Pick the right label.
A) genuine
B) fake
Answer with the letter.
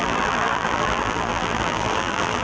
B